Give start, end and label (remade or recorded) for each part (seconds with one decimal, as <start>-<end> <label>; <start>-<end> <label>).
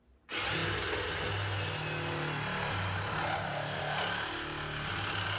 0.0-5.4 recorded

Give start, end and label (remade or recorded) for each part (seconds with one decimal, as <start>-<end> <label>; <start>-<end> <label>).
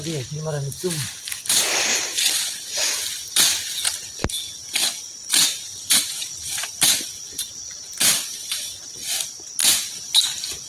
0.0-4.9 recorded; 4.9-6.6 remade; 6.6-10.7 recorded